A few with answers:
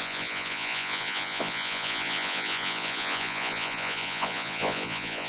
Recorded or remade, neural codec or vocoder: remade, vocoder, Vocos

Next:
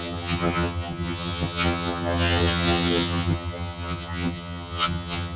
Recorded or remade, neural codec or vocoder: remade, vocoder, HiFi-GAN